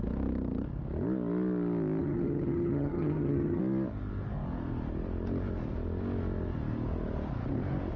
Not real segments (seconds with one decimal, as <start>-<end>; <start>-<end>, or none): 2.0-3.6